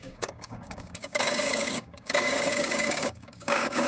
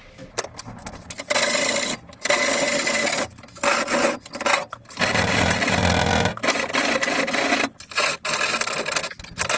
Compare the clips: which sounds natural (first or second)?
second